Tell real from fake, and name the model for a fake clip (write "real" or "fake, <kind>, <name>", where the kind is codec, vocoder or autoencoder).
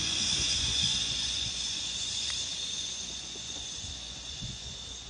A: fake, vocoder, Vocos